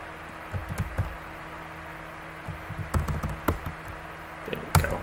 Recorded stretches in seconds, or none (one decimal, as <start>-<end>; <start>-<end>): 0.0-5.0